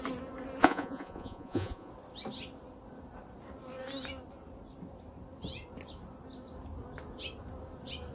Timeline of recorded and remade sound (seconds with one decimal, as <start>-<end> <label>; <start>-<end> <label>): 0.0-0.6 recorded; 0.6-1.9 remade; 1.9-8.1 recorded